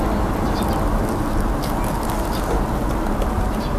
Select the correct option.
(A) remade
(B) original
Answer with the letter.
B